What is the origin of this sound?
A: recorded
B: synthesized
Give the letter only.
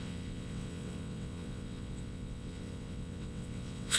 B